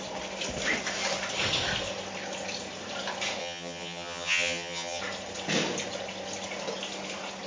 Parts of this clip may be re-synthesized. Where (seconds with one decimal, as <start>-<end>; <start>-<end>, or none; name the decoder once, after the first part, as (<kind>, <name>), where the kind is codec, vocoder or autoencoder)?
3.4-5.0 (vocoder, HiFi-GAN)